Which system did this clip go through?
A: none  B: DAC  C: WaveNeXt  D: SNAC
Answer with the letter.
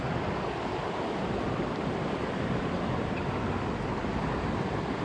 A